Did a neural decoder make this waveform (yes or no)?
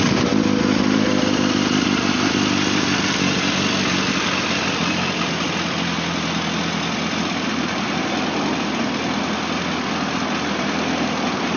no